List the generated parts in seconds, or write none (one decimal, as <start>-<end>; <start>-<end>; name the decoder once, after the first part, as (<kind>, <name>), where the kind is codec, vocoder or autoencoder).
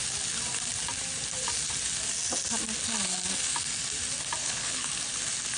4.4-4.9 (codec, HILCodec)